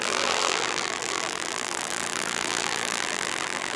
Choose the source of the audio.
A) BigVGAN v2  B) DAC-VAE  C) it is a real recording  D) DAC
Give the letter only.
A